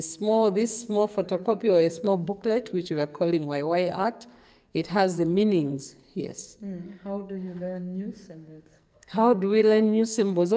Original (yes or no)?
no